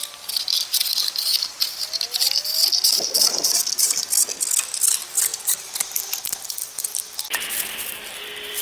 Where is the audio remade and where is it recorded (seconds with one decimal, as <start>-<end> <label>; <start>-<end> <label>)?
0.0-8.6 recorded